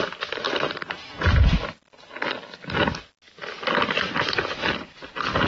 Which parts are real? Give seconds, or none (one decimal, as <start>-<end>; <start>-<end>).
0.0-5.5